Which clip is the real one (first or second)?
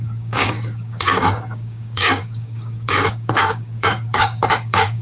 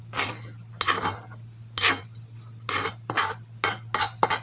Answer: second